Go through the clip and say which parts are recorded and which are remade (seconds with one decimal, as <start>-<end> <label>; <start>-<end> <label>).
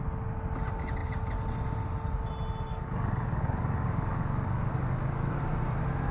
0.0-2.7 recorded; 2.7-5.4 remade; 5.4-6.1 recorded